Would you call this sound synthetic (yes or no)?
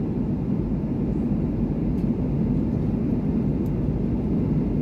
no